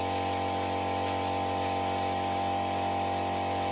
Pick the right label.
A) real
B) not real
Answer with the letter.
A